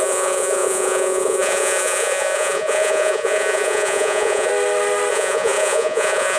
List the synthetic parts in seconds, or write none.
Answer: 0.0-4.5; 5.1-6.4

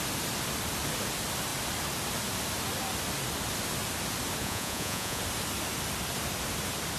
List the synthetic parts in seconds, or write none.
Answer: 4.4-5.2

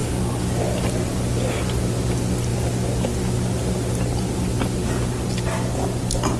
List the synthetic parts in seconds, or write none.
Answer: none

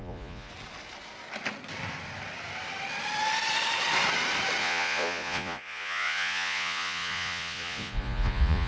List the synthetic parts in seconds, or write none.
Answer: 0.0-0.5; 4.6-8.7

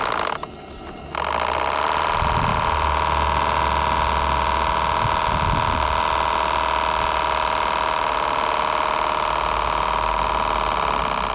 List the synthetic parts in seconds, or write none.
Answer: none